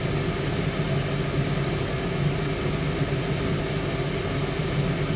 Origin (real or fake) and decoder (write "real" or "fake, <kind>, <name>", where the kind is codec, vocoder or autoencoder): real